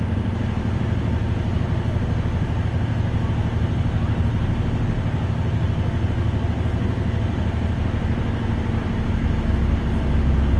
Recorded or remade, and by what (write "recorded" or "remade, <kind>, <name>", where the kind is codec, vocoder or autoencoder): recorded